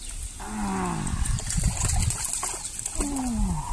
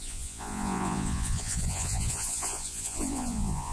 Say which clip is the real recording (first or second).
first